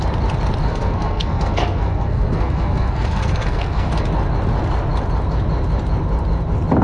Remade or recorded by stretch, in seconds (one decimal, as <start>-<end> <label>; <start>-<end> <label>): 0.0-0.6 recorded; 0.6-3.9 remade; 3.9-6.8 recorded